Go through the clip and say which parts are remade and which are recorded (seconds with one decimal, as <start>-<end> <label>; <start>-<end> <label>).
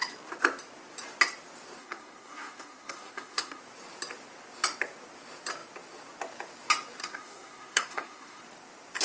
0.0-1.8 recorded; 1.8-3.6 remade; 3.6-7.0 recorded; 7.0-8.4 remade; 8.4-9.0 recorded